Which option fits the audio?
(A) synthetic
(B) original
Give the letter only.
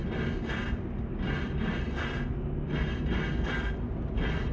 B